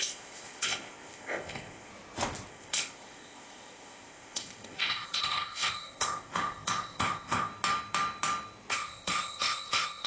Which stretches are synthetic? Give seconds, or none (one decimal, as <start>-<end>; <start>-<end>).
0.0-1.9; 2.5-7.5; 8.7-10.1